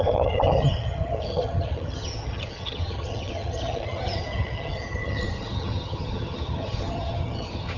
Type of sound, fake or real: fake